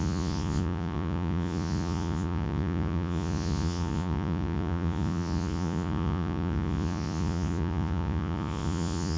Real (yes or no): no